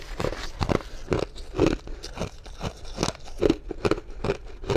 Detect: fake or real real